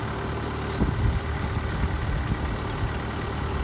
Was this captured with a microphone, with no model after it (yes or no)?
yes